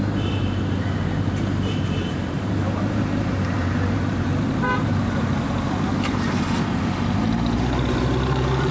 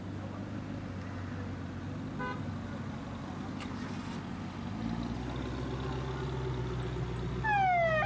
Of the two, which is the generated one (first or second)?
first